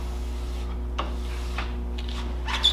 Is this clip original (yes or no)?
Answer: yes